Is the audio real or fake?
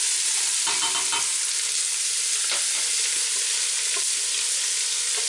real